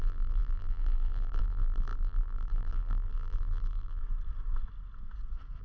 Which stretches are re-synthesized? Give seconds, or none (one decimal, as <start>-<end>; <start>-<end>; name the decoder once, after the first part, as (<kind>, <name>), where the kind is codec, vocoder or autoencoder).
0.0-4.0 (vocoder, BigVGAN v2)